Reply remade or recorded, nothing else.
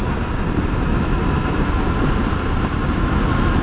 recorded